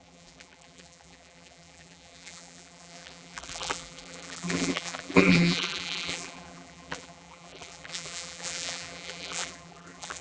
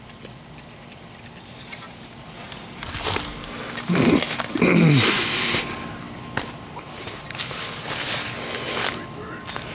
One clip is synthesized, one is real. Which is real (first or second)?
second